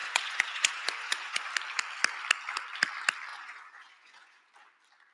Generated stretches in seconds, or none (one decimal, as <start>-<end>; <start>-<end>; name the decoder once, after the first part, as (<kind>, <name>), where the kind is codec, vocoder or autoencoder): 0.0-1.5 (vocoder, Vocos); 3.3-4.4